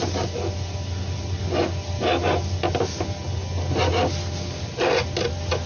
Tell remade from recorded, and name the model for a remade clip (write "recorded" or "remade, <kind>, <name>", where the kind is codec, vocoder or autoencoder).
recorded